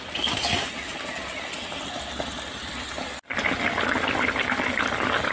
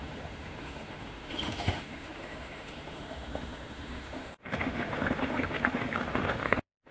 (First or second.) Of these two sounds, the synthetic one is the second